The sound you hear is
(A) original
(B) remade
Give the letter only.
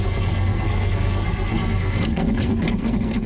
B